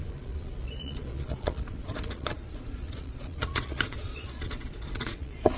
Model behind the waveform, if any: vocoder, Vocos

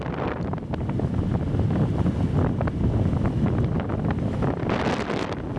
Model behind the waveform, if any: none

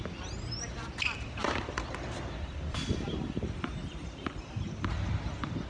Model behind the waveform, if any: vocoder, BigVGAN v2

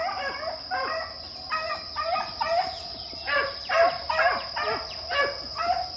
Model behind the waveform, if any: none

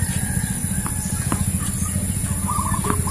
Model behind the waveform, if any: none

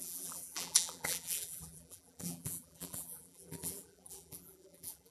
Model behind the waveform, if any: vocoder, BigVGAN v2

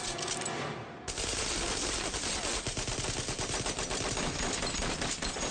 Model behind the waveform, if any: none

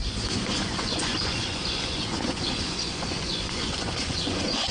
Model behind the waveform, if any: vocoder, Vocos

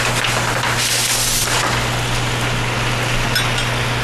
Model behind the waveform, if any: none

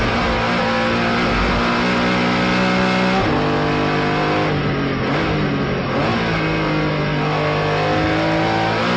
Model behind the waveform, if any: none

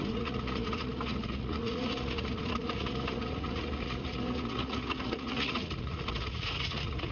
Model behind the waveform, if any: vocoder, Vocos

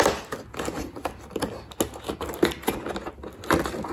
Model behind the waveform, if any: none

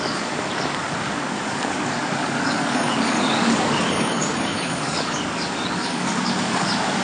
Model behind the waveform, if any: codec, DAC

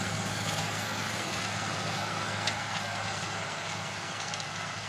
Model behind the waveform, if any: codec, SNAC